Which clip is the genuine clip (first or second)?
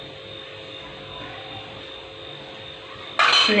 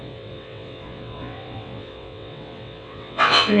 first